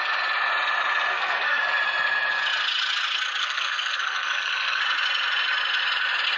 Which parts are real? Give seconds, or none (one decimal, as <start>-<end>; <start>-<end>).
0.0-1.1; 1.6-3.4; 4.8-6.4